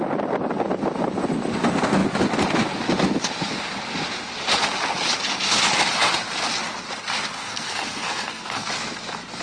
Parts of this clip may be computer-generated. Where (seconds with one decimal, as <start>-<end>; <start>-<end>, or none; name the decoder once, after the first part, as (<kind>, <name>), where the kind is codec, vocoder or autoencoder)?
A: 7.4-8.7 (codec, SNAC)